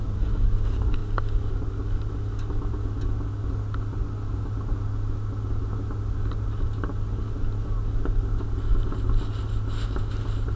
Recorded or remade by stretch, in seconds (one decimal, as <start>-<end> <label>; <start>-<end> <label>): 0.0-10.6 recorded